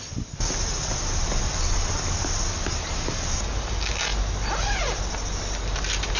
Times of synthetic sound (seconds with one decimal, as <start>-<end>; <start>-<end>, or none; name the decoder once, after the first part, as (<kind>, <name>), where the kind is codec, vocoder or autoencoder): none